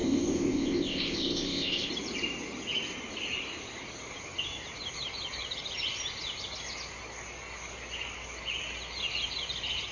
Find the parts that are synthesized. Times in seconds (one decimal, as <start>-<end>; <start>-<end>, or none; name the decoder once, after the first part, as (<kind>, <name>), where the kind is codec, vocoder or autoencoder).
0.0-1.9 (codec, ZipCodec)